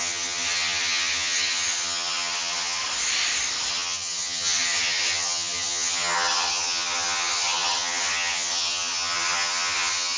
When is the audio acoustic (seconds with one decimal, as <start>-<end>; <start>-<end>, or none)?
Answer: 2.8-3.7